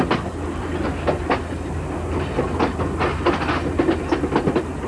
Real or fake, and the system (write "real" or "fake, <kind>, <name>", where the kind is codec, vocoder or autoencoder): real